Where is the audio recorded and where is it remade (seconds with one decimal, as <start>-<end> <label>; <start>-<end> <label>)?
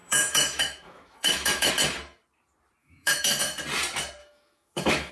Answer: 0.0-1.7 remade; 1.7-2.8 recorded; 2.8-3.6 remade; 3.6-4.2 recorded; 4.2-5.1 remade